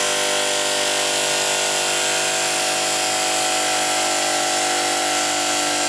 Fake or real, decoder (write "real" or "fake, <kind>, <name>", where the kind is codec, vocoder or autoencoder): real